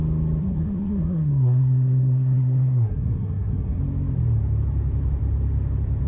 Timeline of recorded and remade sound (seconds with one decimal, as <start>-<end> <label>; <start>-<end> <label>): 0.0-0.4 recorded; 0.4-3.8 remade; 3.8-6.1 recorded